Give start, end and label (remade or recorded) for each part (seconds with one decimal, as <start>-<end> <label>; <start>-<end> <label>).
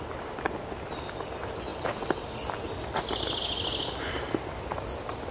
0.0-5.3 recorded